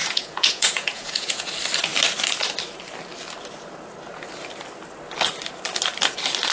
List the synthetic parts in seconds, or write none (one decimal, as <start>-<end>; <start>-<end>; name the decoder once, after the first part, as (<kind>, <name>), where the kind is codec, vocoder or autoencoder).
0.0-1.5 (vocoder, Vocos)